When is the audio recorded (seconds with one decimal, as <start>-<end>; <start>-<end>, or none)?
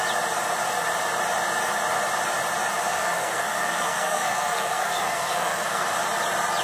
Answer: 0.0-2.9; 6.0-6.6